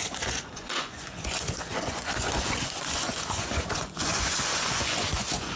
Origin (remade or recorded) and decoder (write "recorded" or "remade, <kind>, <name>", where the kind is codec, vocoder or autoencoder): remade, vocoder, Vocos